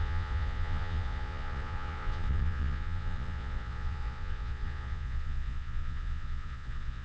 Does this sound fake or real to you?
fake